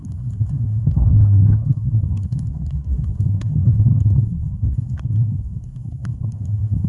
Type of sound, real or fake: fake